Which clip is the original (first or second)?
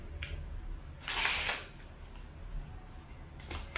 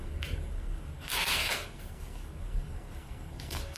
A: first